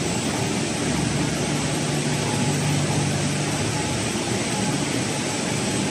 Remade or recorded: recorded